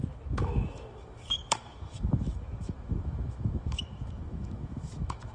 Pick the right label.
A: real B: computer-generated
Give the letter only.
B